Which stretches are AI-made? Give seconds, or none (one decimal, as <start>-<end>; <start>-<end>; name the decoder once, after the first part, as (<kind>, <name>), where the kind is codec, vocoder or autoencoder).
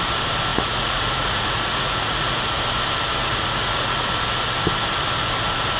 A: 0.5-2.6 (vocoder, Vocos); 3.2-4.1